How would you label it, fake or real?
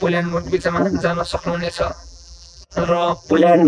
fake